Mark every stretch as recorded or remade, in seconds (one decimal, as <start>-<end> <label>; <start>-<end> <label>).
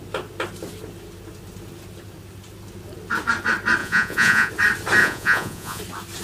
0.0-3.8 recorded; 3.8-4.5 remade; 4.5-5.0 recorded; 5.0-5.8 remade; 5.8-6.2 recorded